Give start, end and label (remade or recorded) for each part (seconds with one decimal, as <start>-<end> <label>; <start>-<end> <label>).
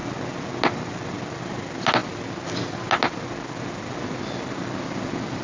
0.0-5.4 recorded